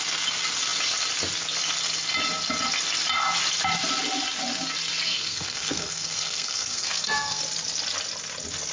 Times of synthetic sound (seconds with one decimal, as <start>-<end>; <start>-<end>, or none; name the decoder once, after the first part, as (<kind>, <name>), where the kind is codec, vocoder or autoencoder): 5.1-7.4 (codec, SNAC)